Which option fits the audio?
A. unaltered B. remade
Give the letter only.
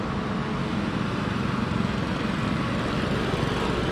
A